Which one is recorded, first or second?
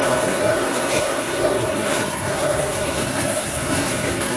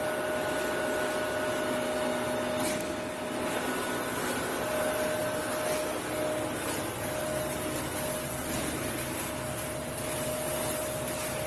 second